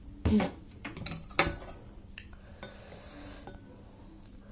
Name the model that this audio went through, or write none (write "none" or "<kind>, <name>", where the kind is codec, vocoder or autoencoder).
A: none